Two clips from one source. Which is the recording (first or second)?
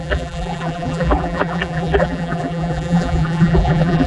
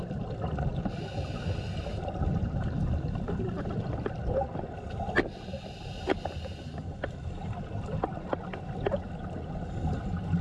second